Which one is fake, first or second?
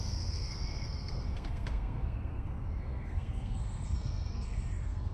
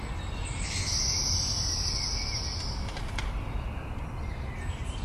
first